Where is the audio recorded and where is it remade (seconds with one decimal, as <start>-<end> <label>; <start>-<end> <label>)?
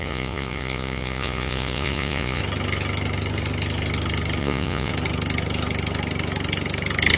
0.0-2.4 remade; 2.4-4.4 recorded; 4.4-4.9 remade; 4.9-7.2 recorded